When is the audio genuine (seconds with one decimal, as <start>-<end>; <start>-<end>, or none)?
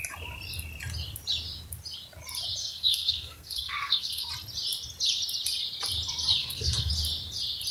0.0-2.6; 4.3-6.4; 6.9-7.7